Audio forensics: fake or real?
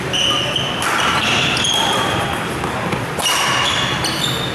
real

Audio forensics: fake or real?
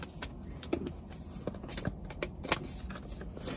real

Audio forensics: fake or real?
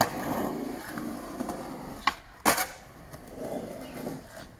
real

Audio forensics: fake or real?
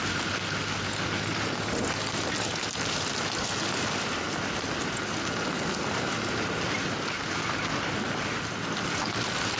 real